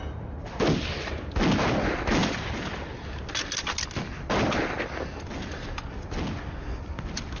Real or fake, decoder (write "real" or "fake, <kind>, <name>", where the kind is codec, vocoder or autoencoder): real